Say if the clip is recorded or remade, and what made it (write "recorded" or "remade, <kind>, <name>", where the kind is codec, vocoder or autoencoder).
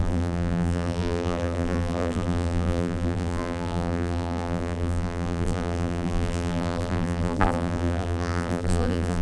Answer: remade, vocoder, BigVGAN v2